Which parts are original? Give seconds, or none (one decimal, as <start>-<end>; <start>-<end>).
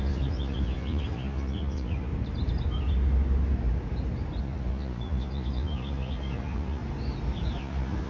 2.1-4.4; 6.8-7.6